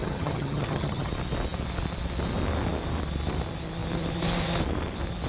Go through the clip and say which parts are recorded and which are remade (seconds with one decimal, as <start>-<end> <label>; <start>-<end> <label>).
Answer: 0.0-1.1 remade; 1.1-5.3 recorded